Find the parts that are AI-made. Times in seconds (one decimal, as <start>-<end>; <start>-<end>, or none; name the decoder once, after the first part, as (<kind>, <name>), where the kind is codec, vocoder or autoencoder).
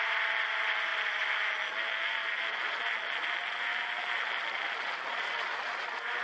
none